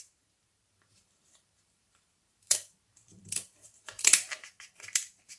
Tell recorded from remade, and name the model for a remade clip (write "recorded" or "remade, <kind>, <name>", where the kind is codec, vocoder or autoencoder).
remade, vocoder, BigVGAN v2